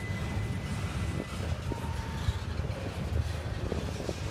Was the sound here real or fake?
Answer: real